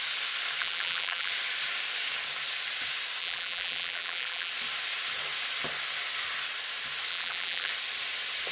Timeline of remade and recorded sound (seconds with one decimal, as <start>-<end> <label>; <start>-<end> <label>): 0.0-0.6 recorded; 0.6-1.3 remade; 1.3-3.2 recorded; 3.2-4.5 remade; 4.5-7.1 recorded; 7.1-7.7 remade; 7.7-8.5 recorded